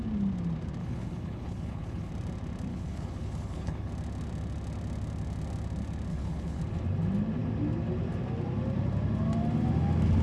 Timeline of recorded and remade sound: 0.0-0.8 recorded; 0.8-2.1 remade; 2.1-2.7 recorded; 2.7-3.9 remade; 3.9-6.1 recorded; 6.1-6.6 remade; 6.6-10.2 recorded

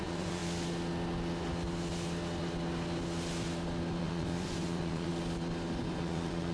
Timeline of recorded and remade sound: 0.0-0.4 remade; 0.4-4.0 recorded; 4.0-5.1 remade; 5.1-5.8 recorded; 5.8-6.5 remade